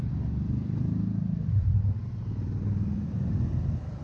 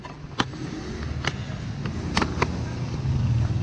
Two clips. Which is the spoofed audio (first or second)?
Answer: first